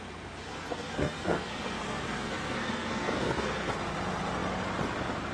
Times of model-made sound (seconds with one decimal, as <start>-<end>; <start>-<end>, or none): 0.5-3.7